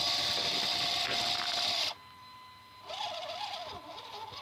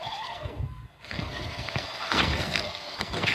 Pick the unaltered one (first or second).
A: first